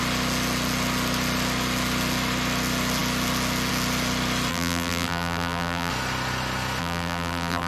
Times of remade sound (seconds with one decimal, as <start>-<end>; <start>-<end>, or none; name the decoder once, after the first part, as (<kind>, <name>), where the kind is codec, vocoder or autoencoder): 4.5-5.9 (vocoder, BigVGAN v2); 6.8-7.7